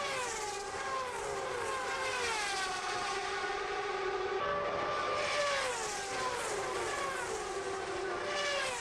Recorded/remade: recorded